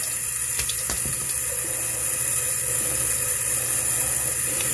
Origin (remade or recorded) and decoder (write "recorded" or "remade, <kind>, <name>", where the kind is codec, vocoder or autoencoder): recorded